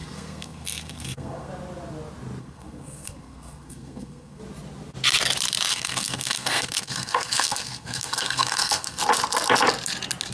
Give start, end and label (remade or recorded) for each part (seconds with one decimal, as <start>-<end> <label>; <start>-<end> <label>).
0.0-1.5 remade; 1.5-2.4 recorded; 2.4-4.4 remade; 4.4-5.7 recorded; 5.7-9.0 remade; 9.0-10.3 recorded